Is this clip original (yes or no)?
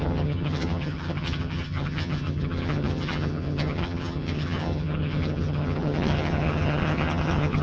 no